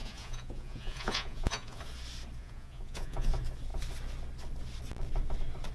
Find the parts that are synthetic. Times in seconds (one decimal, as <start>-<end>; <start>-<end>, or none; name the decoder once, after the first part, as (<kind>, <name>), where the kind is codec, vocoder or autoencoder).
0.0-1.8 (vocoder, Vocos); 2.4-3.3